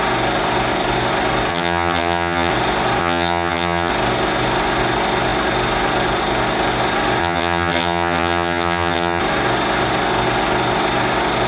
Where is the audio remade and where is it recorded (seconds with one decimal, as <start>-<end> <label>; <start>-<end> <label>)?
0.0-1.5 recorded; 1.5-2.5 remade; 2.5-3.0 recorded; 3.0-3.9 remade; 3.9-7.2 recorded; 7.2-9.2 remade; 9.2-11.5 recorded